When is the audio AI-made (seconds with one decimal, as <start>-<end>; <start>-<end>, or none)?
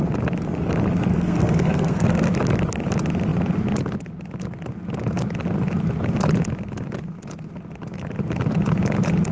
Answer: 1.1-2.3